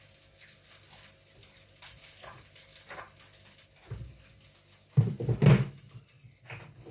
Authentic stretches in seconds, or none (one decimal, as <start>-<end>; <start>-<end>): 0.0-6.9